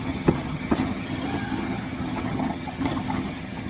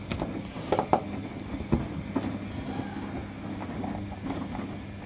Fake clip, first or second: first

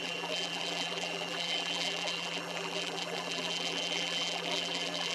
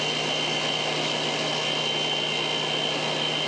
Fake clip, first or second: first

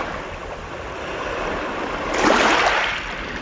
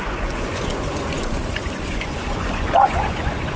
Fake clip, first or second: second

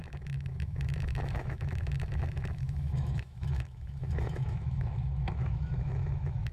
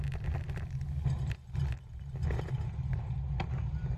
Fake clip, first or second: first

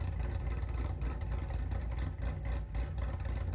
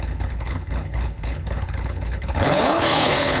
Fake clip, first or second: second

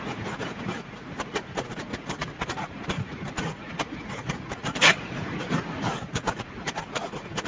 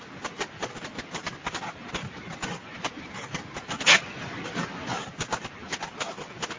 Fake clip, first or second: first